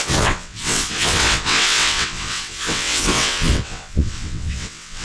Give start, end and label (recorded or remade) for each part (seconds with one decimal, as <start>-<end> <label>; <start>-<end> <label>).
0.0-5.0 remade